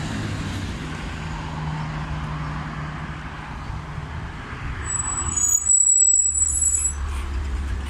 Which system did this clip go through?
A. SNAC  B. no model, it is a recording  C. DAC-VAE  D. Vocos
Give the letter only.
B